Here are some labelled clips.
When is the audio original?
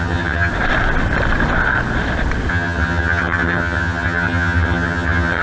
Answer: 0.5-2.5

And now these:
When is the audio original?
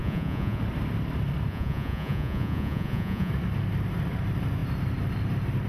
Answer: 0.6-1.5; 3.3-5.7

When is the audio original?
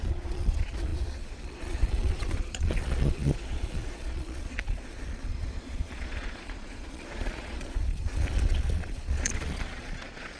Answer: none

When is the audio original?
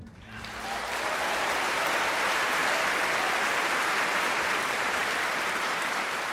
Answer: 2.6-3.8; 5.0-5.6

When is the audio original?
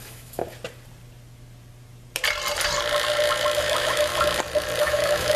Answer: 0.4-3.6; 4.1-4.8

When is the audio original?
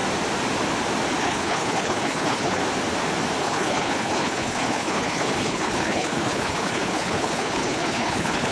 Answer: 0.0-1.2; 2.6-3.4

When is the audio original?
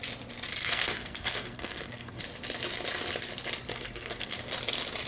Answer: 0.0-0.6; 2.2-3.7; 4.3-5.1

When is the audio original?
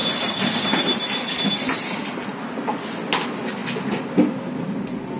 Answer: 0.0-5.2